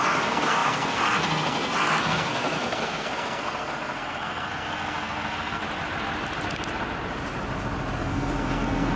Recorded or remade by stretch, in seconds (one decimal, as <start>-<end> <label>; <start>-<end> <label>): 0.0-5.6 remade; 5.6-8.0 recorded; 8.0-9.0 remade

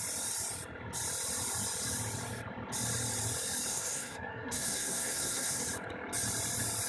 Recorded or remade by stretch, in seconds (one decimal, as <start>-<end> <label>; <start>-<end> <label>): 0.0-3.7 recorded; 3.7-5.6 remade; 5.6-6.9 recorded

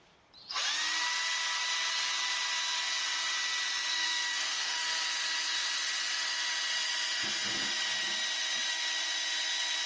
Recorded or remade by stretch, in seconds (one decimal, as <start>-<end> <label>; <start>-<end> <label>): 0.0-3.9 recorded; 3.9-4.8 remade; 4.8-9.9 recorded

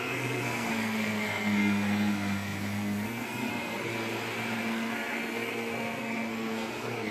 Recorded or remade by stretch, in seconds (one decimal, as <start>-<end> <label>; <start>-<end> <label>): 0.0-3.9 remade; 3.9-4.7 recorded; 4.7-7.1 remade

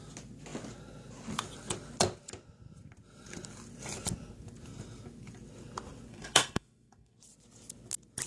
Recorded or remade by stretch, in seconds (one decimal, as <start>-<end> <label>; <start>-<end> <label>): 0.0-6.1 recorded; 6.1-7.2 remade; 7.2-8.3 recorded